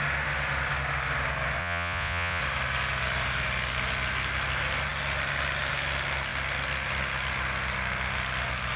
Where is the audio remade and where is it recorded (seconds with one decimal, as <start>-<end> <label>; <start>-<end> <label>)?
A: 0.0-1.6 recorded; 1.6-2.4 remade; 2.4-8.8 recorded

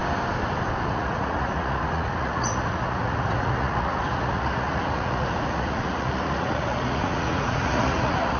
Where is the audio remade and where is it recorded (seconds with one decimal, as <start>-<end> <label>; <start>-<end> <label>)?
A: 0.0-0.9 recorded; 0.9-8.4 remade

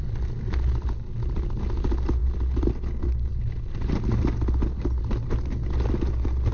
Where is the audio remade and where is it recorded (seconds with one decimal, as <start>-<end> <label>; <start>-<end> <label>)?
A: 0.0-6.5 recorded

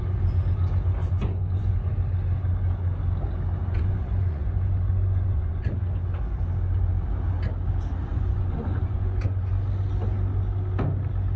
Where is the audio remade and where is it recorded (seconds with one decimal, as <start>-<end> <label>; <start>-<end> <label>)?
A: 0.0-1.0 recorded; 1.0-1.9 remade; 1.9-3.6 recorded; 3.6-5.8 remade; 5.8-8.1 recorded; 8.1-9.5 remade; 9.5-11.4 recorded

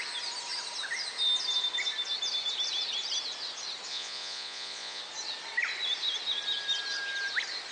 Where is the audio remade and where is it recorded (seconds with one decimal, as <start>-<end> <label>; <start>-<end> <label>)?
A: 0.0-3.9 recorded; 3.9-5.0 remade; 5.0-7.7 recorded